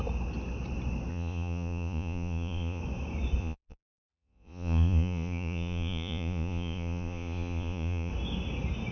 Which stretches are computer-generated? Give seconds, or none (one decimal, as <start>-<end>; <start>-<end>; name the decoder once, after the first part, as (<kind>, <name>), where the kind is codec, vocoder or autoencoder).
1.1-2.8 (vocoder, Vocos); 3.4-8.1